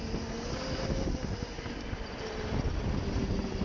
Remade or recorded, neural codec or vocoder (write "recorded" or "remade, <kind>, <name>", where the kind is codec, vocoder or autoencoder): recorded